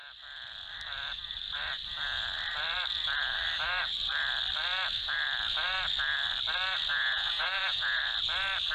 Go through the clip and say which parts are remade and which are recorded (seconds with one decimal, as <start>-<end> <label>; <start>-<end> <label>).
0.0-6.9 recorded; 6.9-8.0 remade; 8.0-8.7 recorded